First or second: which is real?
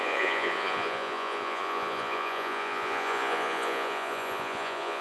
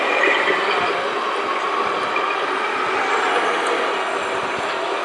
second